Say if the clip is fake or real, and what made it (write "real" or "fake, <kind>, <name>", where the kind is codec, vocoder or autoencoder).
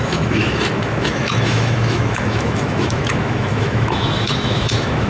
fake, autoencoder, DAC-VAE